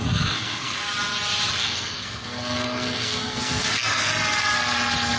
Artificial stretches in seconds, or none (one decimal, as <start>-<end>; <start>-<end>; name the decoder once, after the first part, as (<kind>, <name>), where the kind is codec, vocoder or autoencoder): 0.0-0.8 (codec, SNAC); 1.5-4.1